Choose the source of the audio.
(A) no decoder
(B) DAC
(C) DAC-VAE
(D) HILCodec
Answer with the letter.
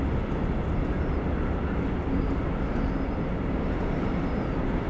A